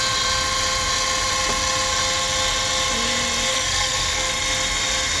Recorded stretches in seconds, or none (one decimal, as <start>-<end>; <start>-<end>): 0.0-3.5; 4.3-5.2